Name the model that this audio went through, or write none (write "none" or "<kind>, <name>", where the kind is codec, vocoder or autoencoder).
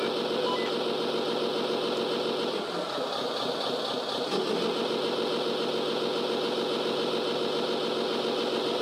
none